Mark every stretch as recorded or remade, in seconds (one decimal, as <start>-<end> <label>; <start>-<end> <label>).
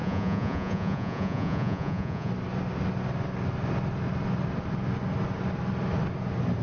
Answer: 0.0-2.3 remade; 2.3-6.6 recorded